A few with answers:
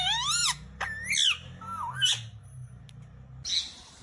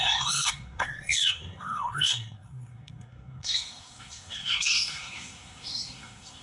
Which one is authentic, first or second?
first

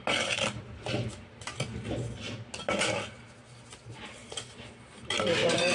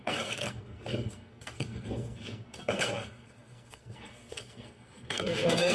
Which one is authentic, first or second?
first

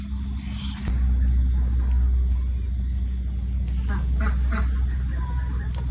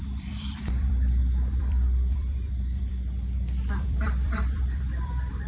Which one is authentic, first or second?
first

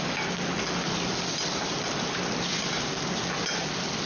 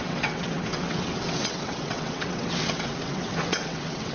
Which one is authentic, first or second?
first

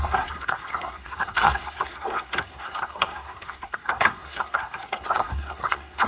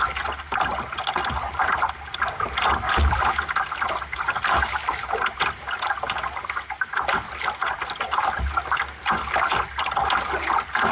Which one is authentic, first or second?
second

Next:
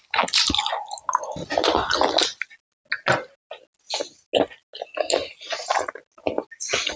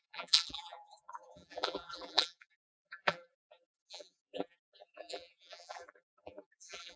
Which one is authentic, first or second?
first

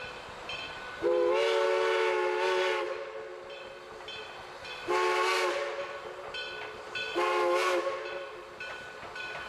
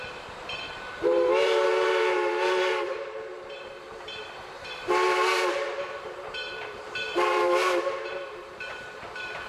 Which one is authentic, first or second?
first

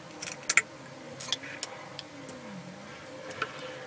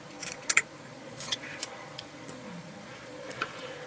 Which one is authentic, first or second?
first